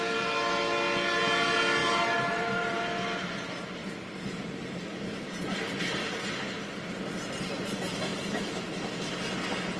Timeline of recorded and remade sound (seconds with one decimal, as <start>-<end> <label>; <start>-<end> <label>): 0.0-1.8 recorded; 1.8-2.8 remade; 2.8-3.8 recorded; 3.8-4.4 remade; 4.4-8.1 recorded; 8.1-8.8 remade; 8.8-9.8 recorded